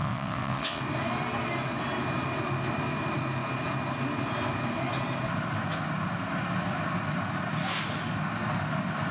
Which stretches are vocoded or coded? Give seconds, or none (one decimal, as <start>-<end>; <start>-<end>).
0.0-0.8

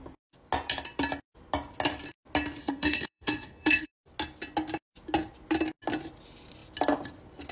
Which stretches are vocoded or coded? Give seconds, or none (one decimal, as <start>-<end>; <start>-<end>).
2.6-3.9

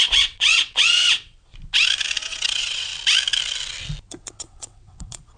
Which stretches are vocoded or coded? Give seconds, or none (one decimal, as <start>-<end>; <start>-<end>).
0.0-1.5; 2.2-2.9; 4.3-5.4

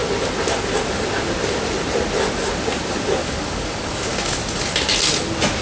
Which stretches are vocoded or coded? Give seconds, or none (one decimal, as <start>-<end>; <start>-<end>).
3.2-4.4